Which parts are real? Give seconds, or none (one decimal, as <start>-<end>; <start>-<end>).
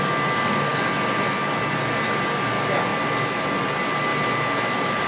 0.0-5.1